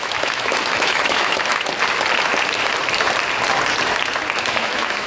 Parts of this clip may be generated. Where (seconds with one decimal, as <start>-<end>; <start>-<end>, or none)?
0.0-1.5; 4.6-5.1